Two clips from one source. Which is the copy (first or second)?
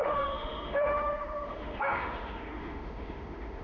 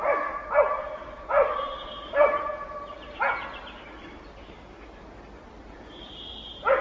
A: first